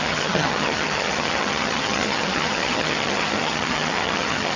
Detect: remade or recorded remade